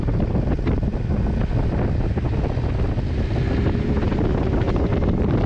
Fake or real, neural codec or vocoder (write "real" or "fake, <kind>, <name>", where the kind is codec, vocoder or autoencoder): real